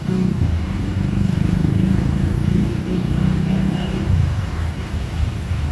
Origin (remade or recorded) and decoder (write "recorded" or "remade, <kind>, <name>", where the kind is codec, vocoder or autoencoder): remade, codec, DAC